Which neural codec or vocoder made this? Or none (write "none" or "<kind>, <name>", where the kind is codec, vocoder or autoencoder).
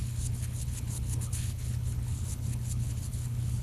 codec, HILCodec